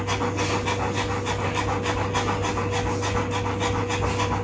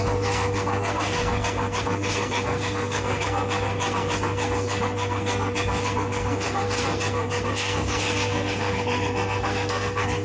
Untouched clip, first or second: first